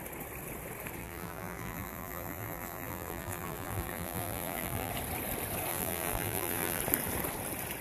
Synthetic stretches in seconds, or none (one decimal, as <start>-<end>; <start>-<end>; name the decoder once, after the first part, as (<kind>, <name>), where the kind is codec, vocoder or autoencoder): 1.0-4.9 (vocoder, BigVGAN v2); 5.7-6.8